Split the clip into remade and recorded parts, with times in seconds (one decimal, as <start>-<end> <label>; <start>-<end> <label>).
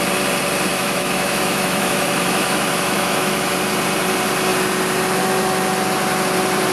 0.0-0.7 recorded; 0.7-3.5 remade; 3.5-6.7 recorded